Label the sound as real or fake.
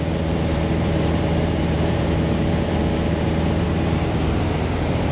fake